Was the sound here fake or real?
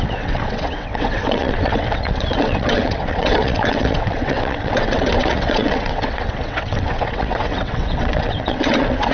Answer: fake